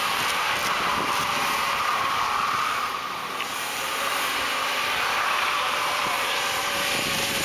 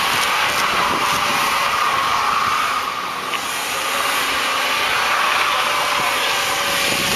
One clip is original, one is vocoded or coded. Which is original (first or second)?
second